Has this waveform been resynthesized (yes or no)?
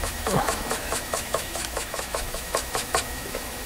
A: yes